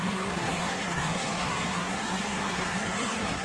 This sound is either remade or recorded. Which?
remade